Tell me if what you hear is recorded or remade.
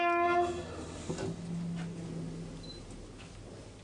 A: recorded